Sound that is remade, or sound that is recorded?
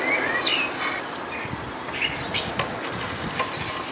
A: recorded